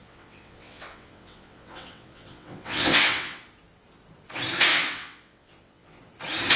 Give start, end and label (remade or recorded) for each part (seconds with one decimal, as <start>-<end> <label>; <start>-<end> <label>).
0.0-3.4 remade; 3.4-4.7 recorded; 4.7-6.0 remade; 6.0-6.6 recorded